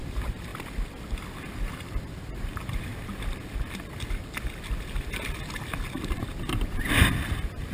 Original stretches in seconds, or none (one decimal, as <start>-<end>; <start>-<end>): 0.5-2.0; 2.9-7.7